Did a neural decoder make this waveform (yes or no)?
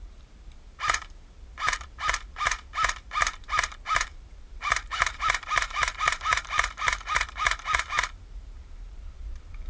yes